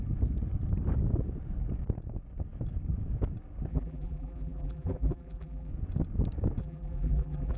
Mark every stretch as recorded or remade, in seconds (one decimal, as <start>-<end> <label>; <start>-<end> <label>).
0.0-3.7 recorded; 3.7-5.7 remade; 5.7-6.6 recorded; 6.6-7.6 remade